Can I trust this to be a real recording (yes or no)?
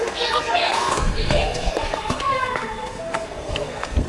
no